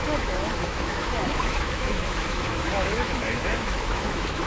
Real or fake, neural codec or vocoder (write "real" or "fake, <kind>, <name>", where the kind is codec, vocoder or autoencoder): fake, autoencoder, DAC-VAE